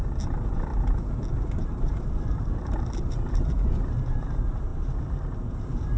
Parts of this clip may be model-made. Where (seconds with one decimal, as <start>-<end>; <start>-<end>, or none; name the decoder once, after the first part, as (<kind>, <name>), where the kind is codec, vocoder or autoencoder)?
0.0-0.7 (vocoder, BigVGAN v2); 1.5-6.0